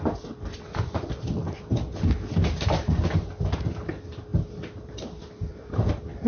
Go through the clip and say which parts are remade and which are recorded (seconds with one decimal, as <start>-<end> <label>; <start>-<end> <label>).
0.0-6.3 recorded